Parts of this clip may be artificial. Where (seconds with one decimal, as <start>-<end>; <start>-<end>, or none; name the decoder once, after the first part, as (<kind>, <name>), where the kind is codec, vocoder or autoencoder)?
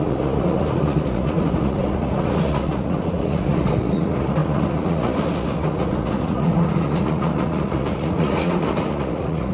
0.0-9.5 (vocoder, Vocos)